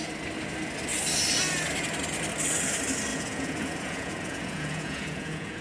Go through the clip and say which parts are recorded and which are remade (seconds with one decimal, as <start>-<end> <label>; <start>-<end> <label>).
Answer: 0.0-3.1 recorded; 3.1-5.6 remade